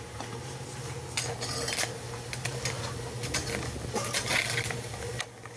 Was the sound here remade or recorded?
recorded